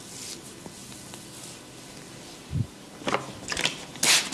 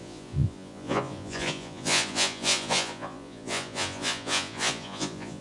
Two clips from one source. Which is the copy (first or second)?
second